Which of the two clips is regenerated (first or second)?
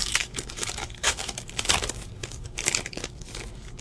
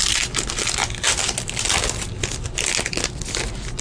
first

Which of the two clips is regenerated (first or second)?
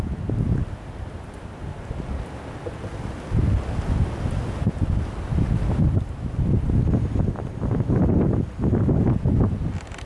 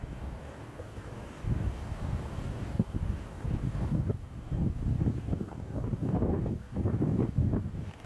second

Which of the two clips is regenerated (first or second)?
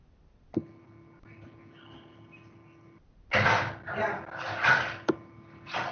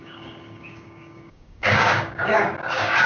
second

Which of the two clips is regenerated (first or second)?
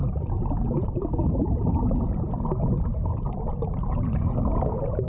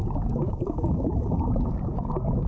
second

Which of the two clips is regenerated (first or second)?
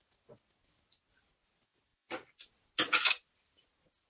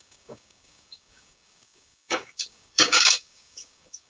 second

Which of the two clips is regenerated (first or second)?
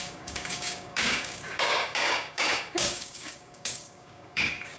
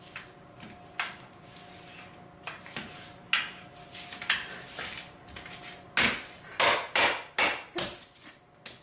first